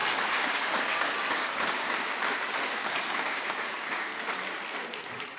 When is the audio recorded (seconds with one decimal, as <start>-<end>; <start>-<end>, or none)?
4.1-5.4